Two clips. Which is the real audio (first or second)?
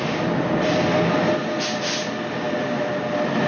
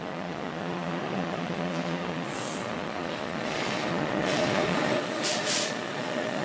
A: first